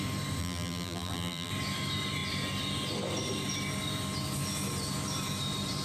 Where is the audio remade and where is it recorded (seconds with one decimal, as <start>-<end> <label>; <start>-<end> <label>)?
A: 0.0-0.4 recorded; 0.4-1.5 remade; 1.5-5.8 recorded